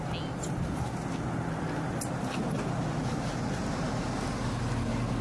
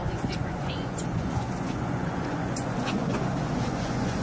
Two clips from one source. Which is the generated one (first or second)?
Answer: second